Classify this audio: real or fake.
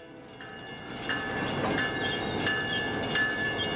real